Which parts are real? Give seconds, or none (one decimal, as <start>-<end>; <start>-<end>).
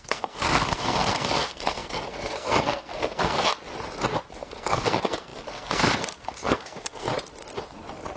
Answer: 3.5-4.4; 7.1-8.2